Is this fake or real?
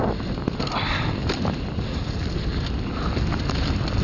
real